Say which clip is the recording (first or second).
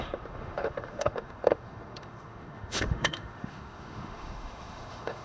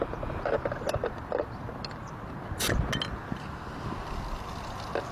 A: second